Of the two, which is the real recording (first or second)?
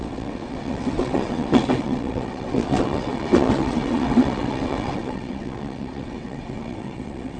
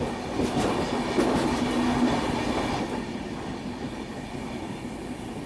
second